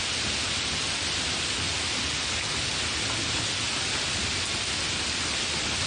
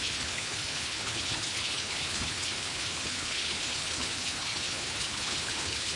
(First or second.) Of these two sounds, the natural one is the first